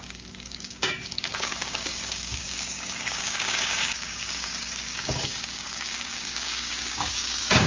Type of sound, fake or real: fake